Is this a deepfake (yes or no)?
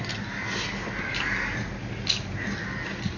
no